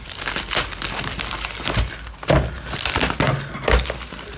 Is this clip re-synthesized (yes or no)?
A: no